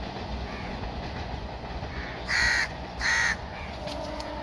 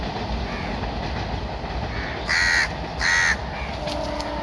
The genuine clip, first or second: second